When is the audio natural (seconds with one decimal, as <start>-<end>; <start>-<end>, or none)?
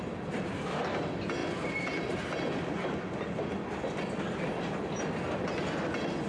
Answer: 0.0-6.3